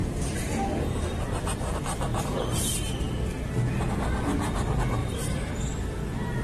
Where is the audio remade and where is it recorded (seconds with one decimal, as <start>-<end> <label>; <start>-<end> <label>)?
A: 0.0-0.5 remade; 0.5-5.0 recorded; 5.0-5.5 remade; 5.5-6.4 recorded